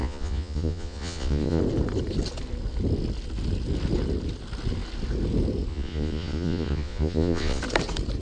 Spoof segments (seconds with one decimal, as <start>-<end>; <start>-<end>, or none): 0.0-1.6; 5.7-7.6